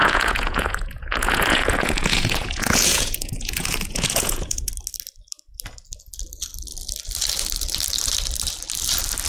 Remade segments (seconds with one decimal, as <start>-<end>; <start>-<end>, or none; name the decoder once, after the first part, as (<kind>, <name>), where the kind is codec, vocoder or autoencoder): 0.0-4.7 (vocoder, Vocos)